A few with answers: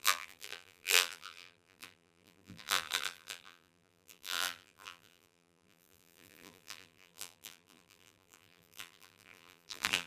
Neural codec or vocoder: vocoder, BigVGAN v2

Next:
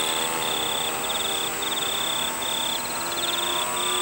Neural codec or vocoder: none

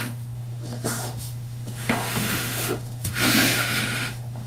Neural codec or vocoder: autoencoder, DAC-VAE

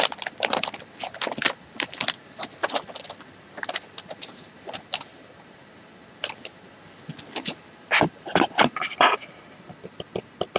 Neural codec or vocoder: none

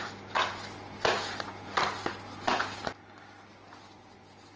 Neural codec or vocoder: none